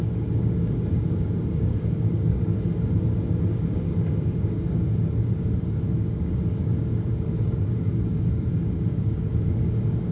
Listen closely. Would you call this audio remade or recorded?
remade